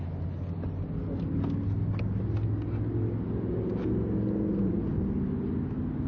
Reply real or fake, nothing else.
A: real